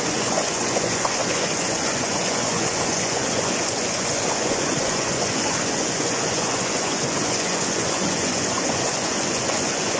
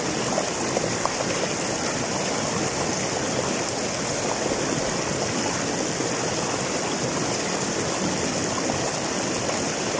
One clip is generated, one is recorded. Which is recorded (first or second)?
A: second